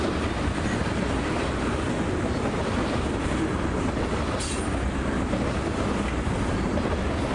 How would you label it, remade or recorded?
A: recorded